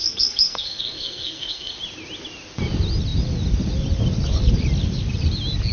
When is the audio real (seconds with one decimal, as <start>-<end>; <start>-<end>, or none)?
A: 1.7-5.7